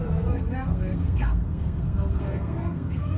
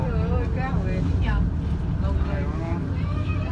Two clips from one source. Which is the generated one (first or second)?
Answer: first